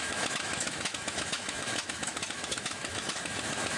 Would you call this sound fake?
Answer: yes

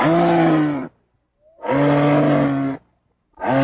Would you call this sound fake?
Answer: no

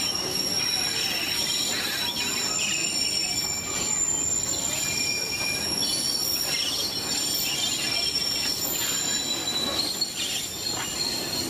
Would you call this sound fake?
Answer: no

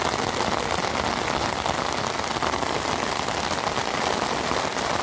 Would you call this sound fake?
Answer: no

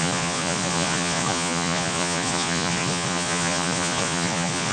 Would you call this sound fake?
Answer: yes